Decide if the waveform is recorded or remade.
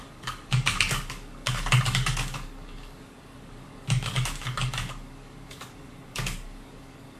remade